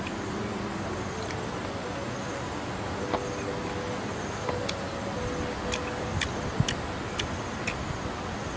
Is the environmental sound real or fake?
real